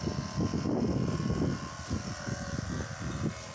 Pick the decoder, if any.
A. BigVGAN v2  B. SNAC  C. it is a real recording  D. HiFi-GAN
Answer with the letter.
C